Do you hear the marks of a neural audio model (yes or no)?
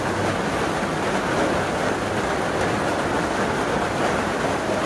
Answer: no